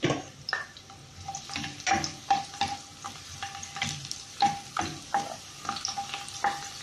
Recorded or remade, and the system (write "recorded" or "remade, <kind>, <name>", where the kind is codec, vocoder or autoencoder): remade, vocoder, BigVGAN v2